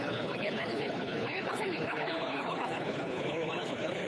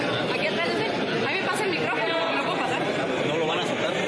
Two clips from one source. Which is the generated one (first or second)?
first